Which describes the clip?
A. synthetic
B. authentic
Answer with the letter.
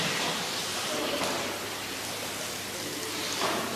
B